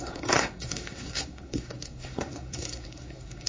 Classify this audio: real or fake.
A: fake